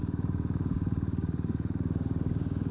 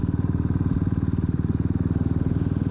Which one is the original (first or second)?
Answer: second